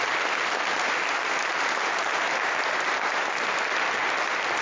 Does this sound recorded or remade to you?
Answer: recorded